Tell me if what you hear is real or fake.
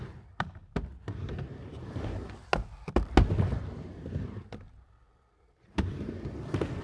real